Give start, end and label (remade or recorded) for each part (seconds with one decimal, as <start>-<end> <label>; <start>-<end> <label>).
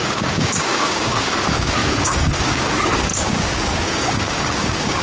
0.0-5.0 remade